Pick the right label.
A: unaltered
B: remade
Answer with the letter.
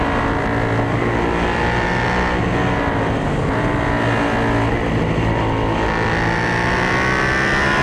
A